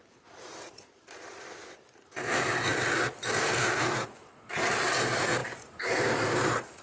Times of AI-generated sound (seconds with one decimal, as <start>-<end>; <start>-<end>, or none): none